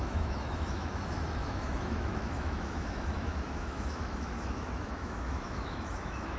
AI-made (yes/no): yes